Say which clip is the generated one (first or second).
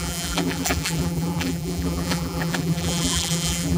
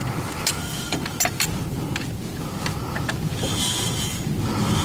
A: first